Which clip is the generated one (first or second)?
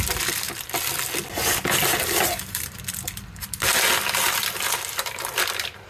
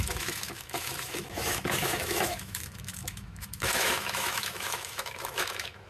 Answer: second